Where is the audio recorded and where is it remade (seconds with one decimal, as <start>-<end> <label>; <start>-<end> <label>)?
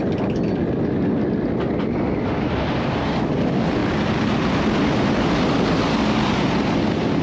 0.0-7.2 recorded